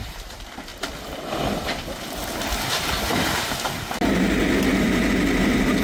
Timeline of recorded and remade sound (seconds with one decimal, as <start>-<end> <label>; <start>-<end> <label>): 0.0-0.7 remade; 0.7-4.2 recorded; 4.2-5.8 remade